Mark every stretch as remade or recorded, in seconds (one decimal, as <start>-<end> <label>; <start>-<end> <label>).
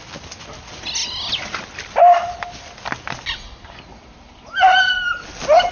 0.0-5.7 recorded